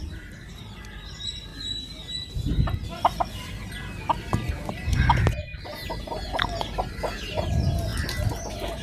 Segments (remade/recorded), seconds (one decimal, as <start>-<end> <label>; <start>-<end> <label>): 0.0-1.5 remade; 1.5-4.7 recorded; 4.7-5.5 remade; 5.5-6.0 recorded; 6.0-7.9 remade; 7.9-8.4 recorded; 8.4-8.8 remade